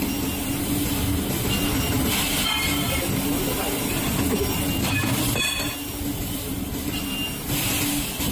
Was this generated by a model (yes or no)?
no